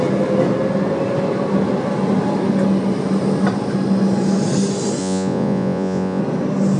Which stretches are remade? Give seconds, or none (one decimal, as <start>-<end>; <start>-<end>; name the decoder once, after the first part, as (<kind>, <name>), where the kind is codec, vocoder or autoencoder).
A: 5.0-6.2 (vocoder, Vocos)